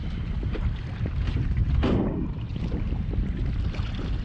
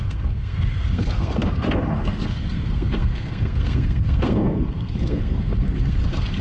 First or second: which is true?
first